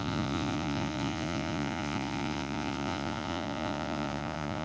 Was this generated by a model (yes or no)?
yes